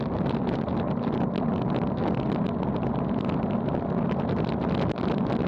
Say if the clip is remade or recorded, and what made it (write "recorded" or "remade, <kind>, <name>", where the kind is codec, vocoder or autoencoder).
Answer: recorded